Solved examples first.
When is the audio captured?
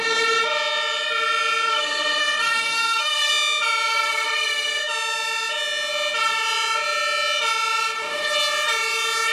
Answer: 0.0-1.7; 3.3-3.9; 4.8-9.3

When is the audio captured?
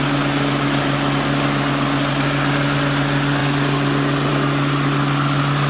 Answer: 0.0-5.7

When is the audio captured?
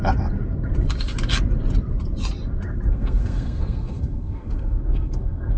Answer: 0.0-2.9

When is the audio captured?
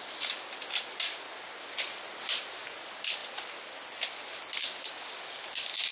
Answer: 0.0-5.9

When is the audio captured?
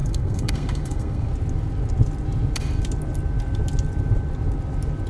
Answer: 1.3-5.1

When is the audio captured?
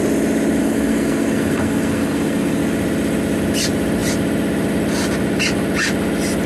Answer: 0.0-0.6; 2.6-6.5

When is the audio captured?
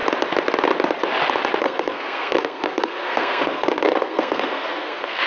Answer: 0.0-1.6